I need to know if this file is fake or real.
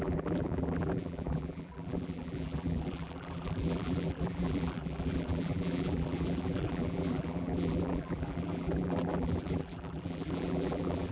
fake